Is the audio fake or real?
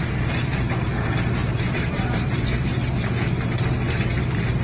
fake